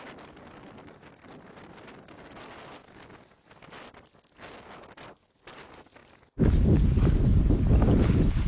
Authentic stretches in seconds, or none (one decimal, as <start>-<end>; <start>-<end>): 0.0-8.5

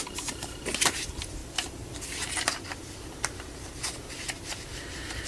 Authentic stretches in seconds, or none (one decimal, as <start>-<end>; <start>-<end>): 1.4-4.6

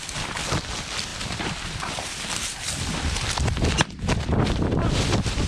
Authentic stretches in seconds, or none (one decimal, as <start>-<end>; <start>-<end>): none

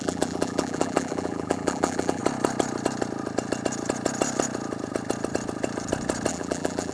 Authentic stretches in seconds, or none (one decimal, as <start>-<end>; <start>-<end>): 2.2-6.3

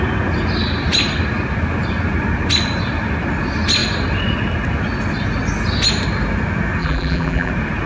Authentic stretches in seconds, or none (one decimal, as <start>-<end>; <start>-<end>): 0.0-6.8; 7.5-7.9